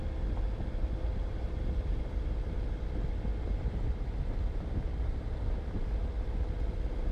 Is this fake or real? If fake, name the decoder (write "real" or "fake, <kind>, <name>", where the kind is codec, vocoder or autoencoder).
real